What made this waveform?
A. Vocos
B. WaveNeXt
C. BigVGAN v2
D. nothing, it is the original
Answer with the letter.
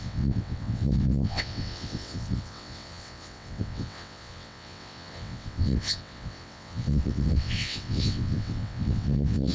B